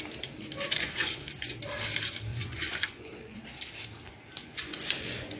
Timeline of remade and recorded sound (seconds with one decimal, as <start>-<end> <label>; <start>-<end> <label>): 0.0-0.7 recorded; 0.7-1.6 remade; 1.6-2.3 recorded; 2.3-3.4 remade; 3.4-4.4 recorded; 4.4-5.4 remade